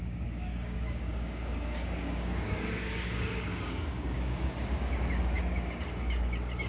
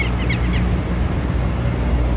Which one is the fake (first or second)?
first